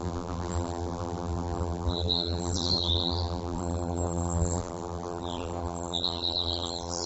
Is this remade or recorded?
remade